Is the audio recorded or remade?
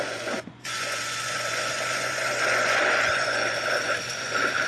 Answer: remade